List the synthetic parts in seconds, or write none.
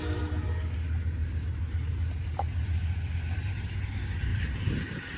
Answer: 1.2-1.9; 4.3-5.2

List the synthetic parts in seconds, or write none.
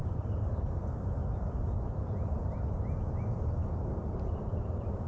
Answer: 0.6-1.2; 4.3-5.1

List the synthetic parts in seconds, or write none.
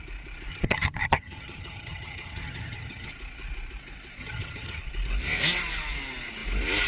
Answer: 0.5-3.1; 4.2-4.8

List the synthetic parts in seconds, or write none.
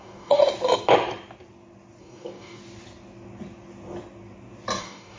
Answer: 0.0-0.4; 2.0-2.6; 4.8-5.2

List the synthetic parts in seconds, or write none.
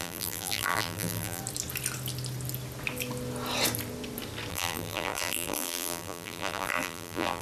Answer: 0.0-1.4; 4.5-7.4